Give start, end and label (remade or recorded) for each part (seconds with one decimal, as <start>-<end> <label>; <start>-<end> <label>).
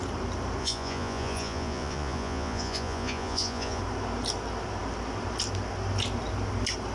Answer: 0.0-0.6 recorded; 0.6-3.8 remade; 3.8-6.9 recorded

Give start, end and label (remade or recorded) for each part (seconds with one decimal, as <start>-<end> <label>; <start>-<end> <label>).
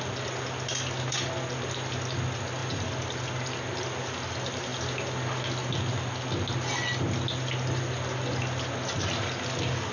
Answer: 0.0-9.9 recorded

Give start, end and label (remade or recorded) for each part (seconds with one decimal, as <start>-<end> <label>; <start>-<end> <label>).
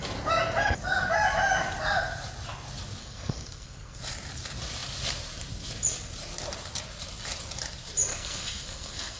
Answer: 0.0-3.0 recorded; 3.0-4.0 remade; 4.0-8.1 recorded; 8.1-9.2 remade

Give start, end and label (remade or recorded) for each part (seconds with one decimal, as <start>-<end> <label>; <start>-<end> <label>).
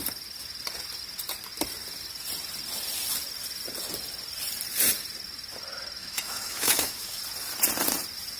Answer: 0.0-6.0 recorded; 6.0-7.2 remade; 7.2-8.4 recorded